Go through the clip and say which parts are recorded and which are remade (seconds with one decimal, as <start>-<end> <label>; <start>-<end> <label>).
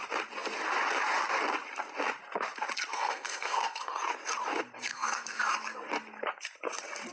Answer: 0.0-2.9 recorded; 2.9-3.9 remade; 3.9-4.9 recorded; 4.9-5.4 remade; 5.4-7.1 recorded